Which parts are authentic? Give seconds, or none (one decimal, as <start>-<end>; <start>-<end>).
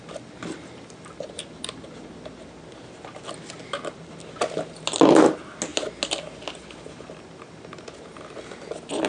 0.0-9.1